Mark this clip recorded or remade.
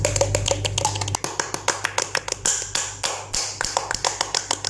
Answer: recorded